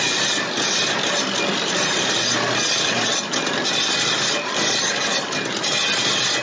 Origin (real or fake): real